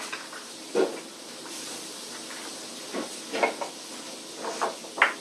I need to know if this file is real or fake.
real